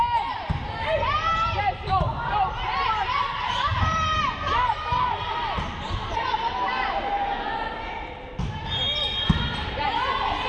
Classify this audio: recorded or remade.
recorded